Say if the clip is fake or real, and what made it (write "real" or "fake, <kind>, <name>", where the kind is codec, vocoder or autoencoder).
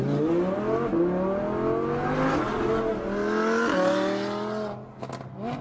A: real